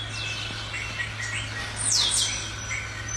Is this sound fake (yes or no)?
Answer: no